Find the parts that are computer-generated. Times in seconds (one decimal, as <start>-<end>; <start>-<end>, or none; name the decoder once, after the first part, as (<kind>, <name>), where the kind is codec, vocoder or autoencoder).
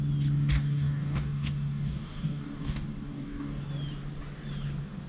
0.5-3.6 (codec, DAC)